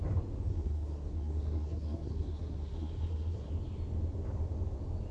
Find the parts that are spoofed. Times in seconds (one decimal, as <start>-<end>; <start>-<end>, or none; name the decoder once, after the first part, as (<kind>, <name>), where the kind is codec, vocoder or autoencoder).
0.5-3.5 (codec, SNAC)